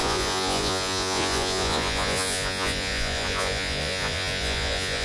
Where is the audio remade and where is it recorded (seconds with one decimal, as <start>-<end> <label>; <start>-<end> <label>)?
0.0-5.0 remade